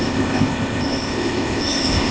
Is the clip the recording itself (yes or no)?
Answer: no